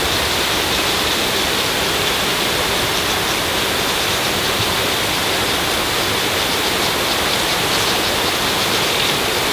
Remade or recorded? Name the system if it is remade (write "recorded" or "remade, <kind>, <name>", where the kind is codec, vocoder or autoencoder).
remade, vocoder, BigVGAN v2